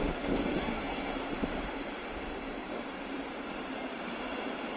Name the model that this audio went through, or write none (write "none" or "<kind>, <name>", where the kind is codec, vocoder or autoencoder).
vocoder, BigVGAN v2